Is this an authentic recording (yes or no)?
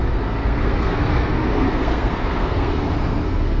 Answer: no